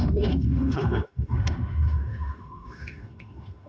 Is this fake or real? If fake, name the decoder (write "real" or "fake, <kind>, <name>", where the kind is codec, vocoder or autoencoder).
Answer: fake, autoencoder, DAC-VAE